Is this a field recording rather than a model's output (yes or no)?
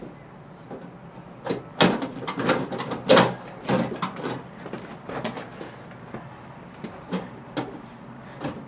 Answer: yes